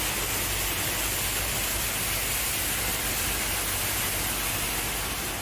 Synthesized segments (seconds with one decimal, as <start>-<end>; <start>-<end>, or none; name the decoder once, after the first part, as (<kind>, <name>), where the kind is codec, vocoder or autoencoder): none